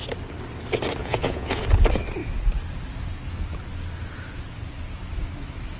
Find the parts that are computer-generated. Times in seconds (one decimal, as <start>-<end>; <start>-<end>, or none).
1.0-1.6